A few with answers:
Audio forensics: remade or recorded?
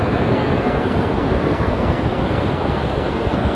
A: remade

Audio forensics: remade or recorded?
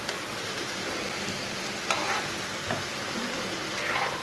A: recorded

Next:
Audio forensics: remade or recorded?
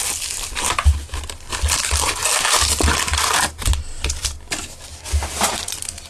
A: recorded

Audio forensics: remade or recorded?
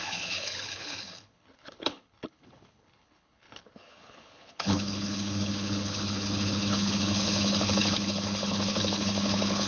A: remade